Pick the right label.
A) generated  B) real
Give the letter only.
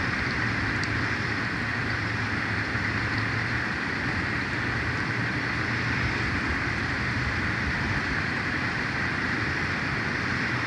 A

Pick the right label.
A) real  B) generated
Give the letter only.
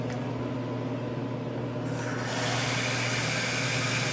A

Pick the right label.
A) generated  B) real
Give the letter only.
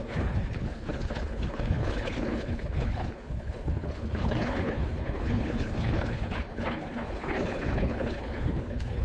A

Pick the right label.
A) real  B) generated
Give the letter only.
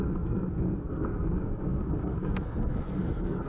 B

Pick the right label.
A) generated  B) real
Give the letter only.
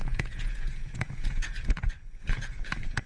A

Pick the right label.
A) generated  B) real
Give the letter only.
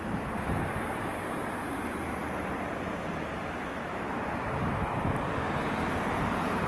B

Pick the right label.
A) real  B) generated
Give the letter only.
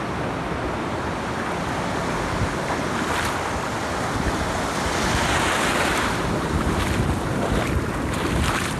A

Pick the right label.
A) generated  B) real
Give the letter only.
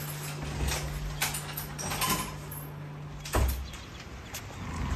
B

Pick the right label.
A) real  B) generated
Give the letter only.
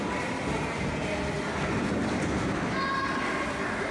A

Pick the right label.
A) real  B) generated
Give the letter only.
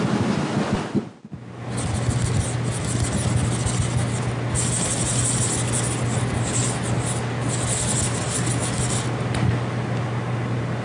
A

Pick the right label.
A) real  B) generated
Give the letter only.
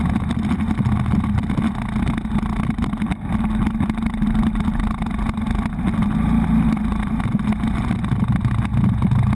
A